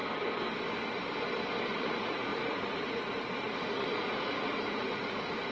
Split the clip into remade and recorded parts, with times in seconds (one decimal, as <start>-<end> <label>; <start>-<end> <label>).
0.0-1.7 recorded; 1.7-5.5 remade